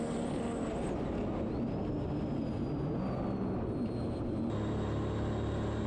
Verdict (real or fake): real